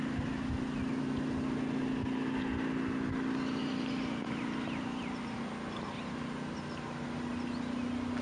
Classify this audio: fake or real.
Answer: real